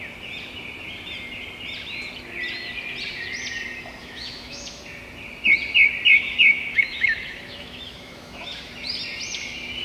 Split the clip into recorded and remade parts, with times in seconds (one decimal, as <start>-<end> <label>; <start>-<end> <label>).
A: 0.0-4.0 recorded; 4.0-4.8 remade; 4.8-6.1 recorded; 6.1-8.7 remade; 8.7-9.8 recorded